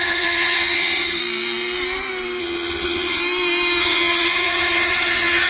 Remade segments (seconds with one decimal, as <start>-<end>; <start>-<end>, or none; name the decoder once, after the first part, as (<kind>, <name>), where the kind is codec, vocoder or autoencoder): 0.0-1.2 (vocoder, HiFi-GAN); 2.4-3.2; 3.8-5.5